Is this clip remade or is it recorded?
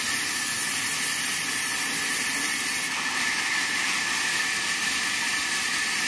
recorded